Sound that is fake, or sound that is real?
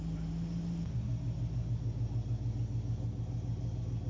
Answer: real